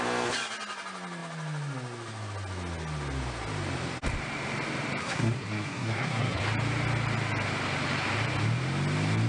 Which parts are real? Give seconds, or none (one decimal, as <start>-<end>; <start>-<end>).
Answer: 0.0-5.0; 6.4-9.3